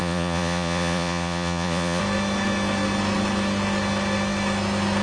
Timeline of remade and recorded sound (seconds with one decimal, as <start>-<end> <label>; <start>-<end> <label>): 0.0-2.0 remade; 2.0-5.0 recorded